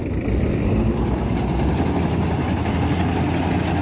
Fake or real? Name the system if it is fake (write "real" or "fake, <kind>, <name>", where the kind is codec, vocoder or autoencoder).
real